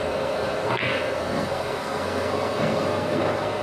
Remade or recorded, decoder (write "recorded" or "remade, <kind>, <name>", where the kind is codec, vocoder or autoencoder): remade, codec, SNAC